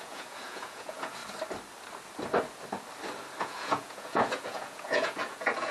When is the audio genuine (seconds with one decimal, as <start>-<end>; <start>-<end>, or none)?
1.2-3.4